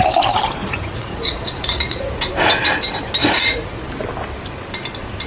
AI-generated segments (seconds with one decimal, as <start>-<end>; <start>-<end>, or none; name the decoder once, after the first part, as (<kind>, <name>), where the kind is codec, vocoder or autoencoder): 0.6-2.3 (vocoder, Vocos); 3.2-3.8